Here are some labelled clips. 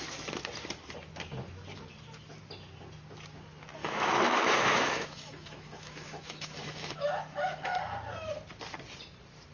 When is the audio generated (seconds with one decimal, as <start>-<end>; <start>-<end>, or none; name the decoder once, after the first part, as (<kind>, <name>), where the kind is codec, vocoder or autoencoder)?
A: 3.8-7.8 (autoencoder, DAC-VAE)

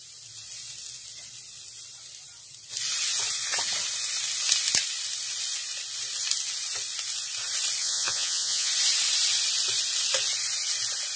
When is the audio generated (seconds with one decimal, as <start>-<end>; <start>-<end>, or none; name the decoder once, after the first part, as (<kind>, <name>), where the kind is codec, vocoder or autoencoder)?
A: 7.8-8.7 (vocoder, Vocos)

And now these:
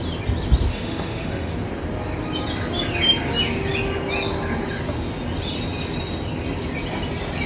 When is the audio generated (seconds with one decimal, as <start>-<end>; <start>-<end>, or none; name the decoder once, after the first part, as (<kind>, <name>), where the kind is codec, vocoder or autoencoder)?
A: 0.7-1.5 (autoencoder, DAC-VAE)

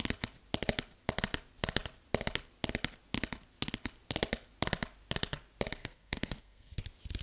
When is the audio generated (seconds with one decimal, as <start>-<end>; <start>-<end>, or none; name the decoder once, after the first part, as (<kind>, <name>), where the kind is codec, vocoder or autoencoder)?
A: 5.8-6.8 (codec, SNAC)

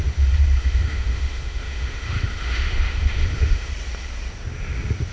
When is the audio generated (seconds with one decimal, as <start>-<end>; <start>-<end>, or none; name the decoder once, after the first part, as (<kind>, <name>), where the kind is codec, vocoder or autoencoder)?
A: 0.6-3.7 (autoencoder, DAC-VAE)